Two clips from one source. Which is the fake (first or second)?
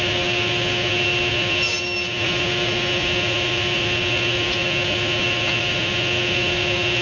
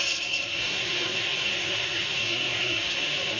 second